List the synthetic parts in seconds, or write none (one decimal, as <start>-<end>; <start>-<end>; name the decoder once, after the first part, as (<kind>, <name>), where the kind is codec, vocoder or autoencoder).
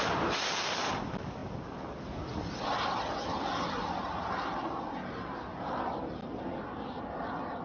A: none